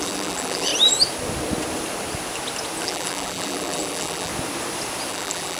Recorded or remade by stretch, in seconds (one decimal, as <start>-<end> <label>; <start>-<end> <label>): 0.0-0.7 remade; 0.7-2.8 recorded; 2.8-4.3 remade; 4.3-5.1 recorded; 5.1-5.6 remade